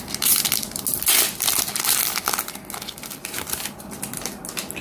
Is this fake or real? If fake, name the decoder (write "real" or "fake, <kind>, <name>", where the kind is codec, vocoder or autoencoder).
real